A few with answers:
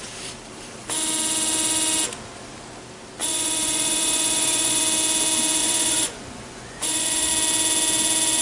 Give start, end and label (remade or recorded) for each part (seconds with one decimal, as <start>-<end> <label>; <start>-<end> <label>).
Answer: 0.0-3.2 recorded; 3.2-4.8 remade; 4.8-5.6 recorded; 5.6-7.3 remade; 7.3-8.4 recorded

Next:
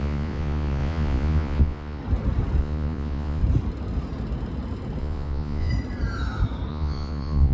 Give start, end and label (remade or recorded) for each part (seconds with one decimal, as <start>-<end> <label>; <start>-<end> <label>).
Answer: 0.0-2.0 remade; 2.0-2.6 recorded; 2.6-3.4 remade; 3.4-5.0 recorded; 5.0-5.7 remade; 5.7-6.7 recorded; 6.7-7.5 remade

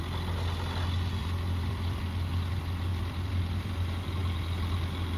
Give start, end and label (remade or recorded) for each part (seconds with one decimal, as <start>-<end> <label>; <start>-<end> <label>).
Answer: 0.0-1.2 recorded; 1.2-2.0 remade; 2.0-2.9 recorded; 2.9-3.7 remade; 3.7-5.2 recorded

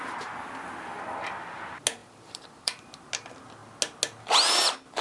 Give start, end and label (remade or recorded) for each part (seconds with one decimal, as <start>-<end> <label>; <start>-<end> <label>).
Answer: 0.0-2.0 recorded; 2.0-2.9 remade; 2.9-5.0 recorded